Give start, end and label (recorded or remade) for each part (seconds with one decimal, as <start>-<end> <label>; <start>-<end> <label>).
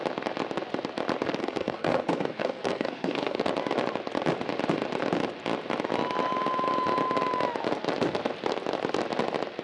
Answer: 0.0-1.4 recorded; 1.4-3.4 remade; 3.4-9.6 recorded